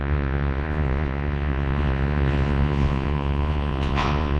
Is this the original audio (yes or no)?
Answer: no